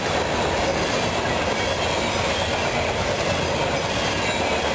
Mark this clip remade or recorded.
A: recorded